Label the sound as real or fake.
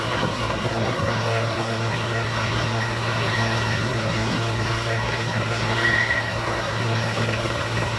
fake